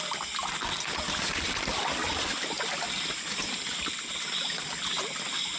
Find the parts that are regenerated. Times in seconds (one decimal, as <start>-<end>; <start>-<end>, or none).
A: none